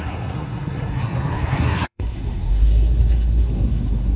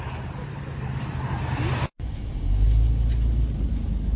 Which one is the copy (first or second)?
first